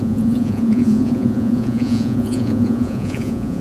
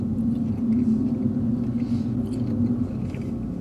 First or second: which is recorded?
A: second